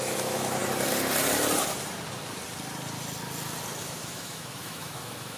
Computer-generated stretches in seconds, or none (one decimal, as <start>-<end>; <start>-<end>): 0.0-0.6; 3.8-5.4

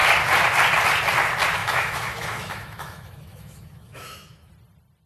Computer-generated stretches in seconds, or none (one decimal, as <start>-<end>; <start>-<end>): 1.6-4.5